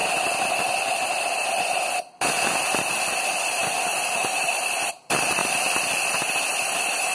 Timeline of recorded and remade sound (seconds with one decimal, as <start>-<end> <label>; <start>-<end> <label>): 0.0-3.2 recorded; 3.2-3.6 remade; 3.6-4.1 recorded; 4.1-5.4 remade; 5.4-6.6 recorded; 6.6-7.1 remade